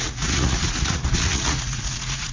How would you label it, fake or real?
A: fake